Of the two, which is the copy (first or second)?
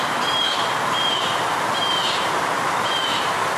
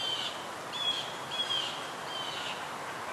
first